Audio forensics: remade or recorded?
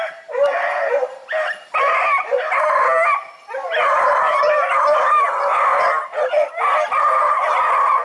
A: recorded